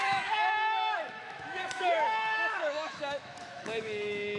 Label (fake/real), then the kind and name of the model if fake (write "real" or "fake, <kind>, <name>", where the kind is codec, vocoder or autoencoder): fake, autoencoder, DAC-VAE